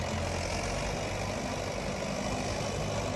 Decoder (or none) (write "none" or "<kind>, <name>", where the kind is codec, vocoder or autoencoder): none